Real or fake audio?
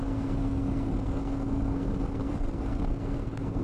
fake